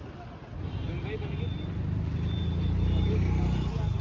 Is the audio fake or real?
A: real